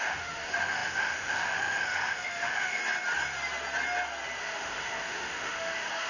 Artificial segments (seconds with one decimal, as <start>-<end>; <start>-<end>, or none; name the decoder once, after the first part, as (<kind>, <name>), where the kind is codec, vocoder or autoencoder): 0.0-2.8 (autoencoder, DAC-VAE); 4.4-6.1